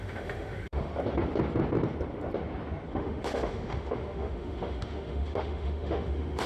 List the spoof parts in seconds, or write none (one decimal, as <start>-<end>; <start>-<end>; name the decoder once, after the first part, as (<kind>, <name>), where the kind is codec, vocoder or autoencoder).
0.0-0.9 (autoencoder, DAC-VAE); 2.9-6.5